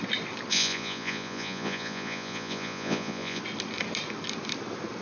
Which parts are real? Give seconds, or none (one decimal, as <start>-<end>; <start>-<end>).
0.0-0.5; 3.4-5.0